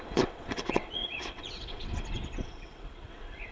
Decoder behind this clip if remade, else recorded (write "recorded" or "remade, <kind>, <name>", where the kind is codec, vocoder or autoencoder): remade, vocoder, WaveNeXt